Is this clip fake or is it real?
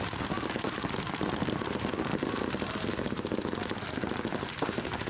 real